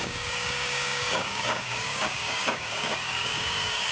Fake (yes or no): yes